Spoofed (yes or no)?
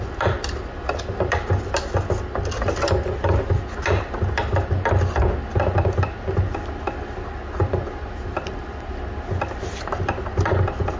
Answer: no